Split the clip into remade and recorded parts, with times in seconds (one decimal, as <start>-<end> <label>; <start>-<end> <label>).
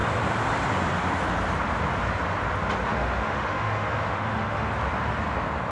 0.0-2.9 recorded; 2.9-4.7 remade; 4.7-5.7 recorded